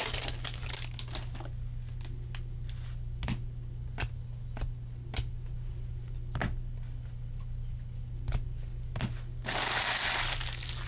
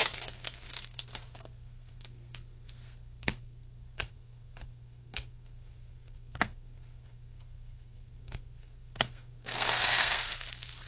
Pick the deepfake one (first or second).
second